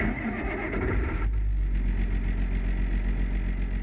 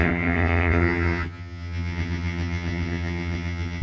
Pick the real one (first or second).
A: first